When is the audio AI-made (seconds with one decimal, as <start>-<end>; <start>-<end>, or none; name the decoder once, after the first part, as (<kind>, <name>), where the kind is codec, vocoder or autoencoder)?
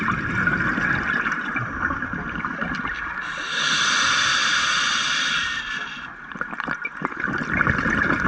none